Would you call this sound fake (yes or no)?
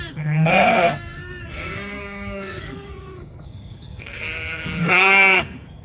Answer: yes